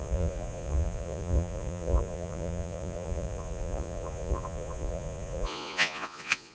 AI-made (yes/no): yes